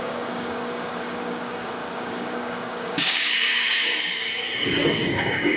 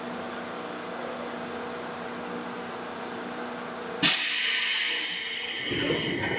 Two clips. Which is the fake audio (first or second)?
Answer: first